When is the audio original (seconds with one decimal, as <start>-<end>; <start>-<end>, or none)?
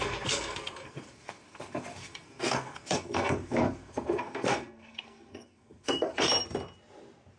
6.3-7.4